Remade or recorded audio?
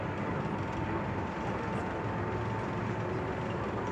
recorded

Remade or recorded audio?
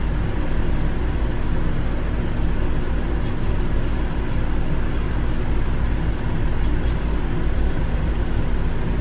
recorded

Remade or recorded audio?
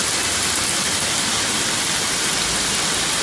recorded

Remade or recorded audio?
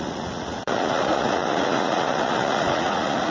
remade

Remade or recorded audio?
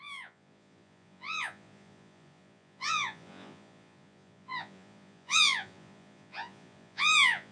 remade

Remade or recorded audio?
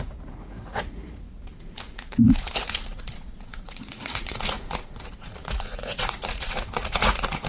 remade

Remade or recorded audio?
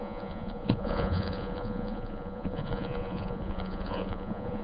remade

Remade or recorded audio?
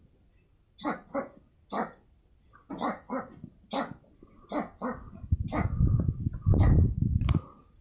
recorded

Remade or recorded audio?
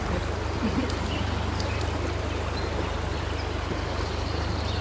recorded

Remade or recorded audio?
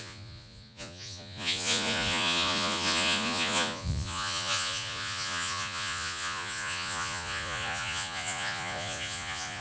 remade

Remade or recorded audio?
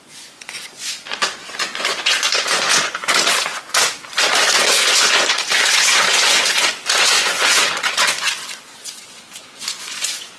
remade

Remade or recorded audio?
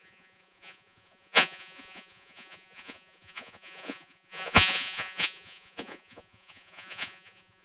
remade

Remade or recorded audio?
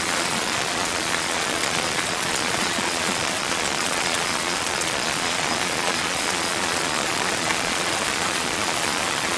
remade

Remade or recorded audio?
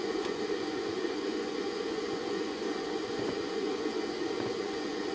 remade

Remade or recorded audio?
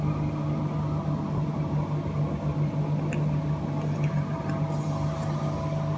recorded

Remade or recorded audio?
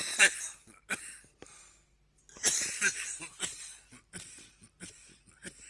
recorded